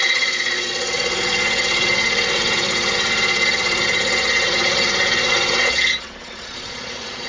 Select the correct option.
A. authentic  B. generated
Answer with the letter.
B